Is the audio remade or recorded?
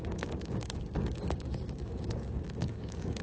remade